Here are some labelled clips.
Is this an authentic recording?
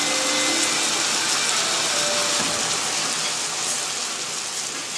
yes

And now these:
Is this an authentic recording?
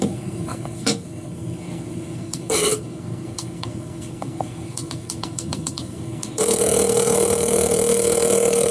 no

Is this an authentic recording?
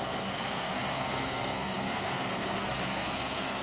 no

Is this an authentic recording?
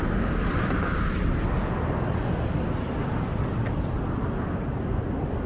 yes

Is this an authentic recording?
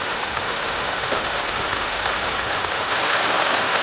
no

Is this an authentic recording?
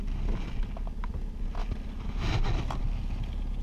yes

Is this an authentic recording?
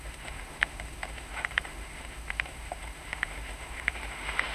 no